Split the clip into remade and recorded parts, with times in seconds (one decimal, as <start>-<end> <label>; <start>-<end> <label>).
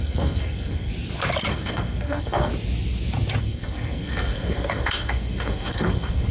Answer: 0.0-0.9 remade; 0.9-1.5 recorded; 1.5-2.5 remade; 2.5-3.4 recorded; 3.4-6.3 remade